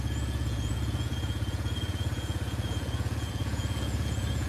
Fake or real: fake